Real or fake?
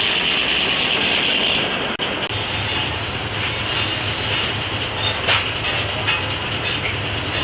real